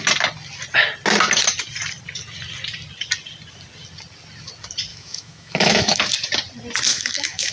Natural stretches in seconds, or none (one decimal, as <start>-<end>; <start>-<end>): 0.0-4.9; 6.0-6.9